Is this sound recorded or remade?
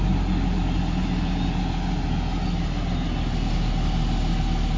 recorded